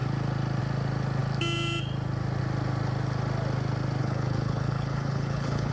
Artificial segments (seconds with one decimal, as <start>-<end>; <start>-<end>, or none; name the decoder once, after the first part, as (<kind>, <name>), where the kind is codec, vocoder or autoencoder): 4.0-5.7 (codec, HILCodec)